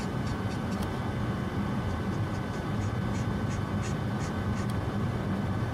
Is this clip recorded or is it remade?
remade